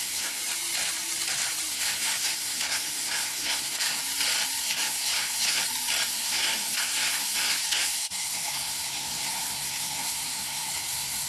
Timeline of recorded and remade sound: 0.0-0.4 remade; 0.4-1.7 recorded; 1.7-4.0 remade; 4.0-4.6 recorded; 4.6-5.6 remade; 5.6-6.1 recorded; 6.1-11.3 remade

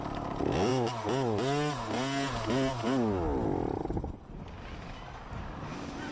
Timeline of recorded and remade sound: 0.0-6.1 recorded

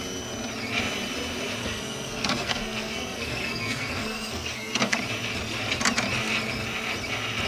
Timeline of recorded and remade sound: 0.0-1.6 recorded; 1.6-5.0 remade; 5.0-7.5 recorded

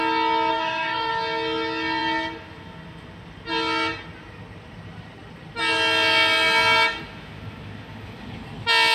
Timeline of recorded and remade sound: 0.0-0.5 recorded; 0.5-1.1 remade; 1.1-8.9 recorded

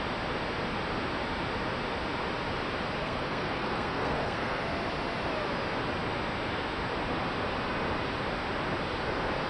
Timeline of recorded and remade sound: 0.0-3.0 recorded; 3.0-4.6 remade; 4.6-9.5 recorded

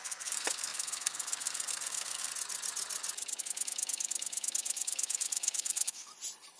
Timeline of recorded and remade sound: 0.0-2.3 remade; 2.3-3.4 recorded; 3.4-6.1 remade; 6.1-6.6 recorded

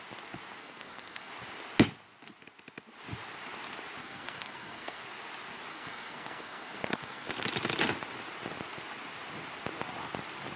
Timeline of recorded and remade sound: 0.0-0.6 recorded; 0.6-1.3 remade; 1.3-4.0 recorded; 4.0-5.0 remade; 5.0-5.7 recorded; 5.7-7.3 remade; 7.3-10.6 recorded